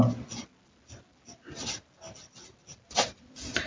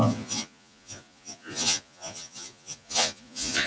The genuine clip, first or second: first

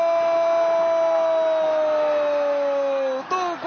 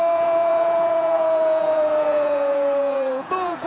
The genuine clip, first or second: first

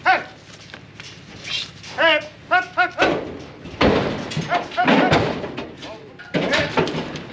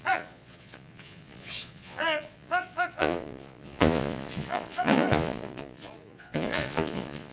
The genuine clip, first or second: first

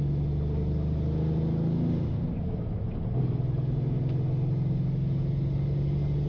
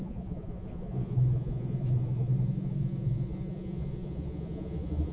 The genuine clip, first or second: first